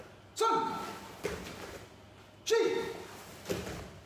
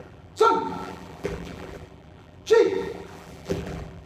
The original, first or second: first